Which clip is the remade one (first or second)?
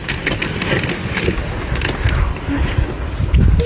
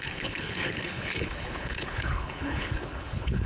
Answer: second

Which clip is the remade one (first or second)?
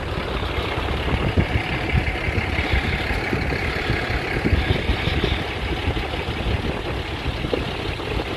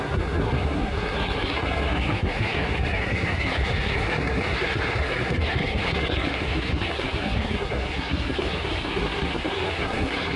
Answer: second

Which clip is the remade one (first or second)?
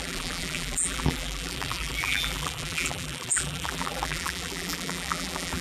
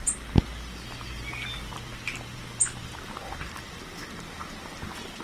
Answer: first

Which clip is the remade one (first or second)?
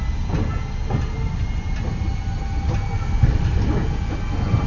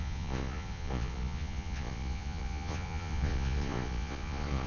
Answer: second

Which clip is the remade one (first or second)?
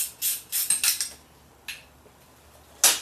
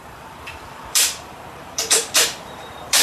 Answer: second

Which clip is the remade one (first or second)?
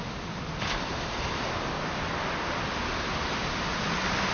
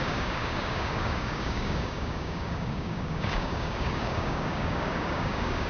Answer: second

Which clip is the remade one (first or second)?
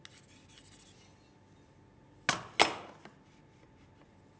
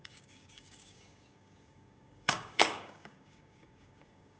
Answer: second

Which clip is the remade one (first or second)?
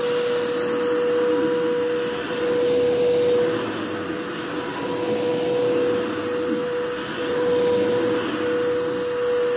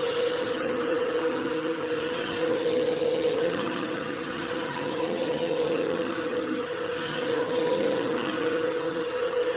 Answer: second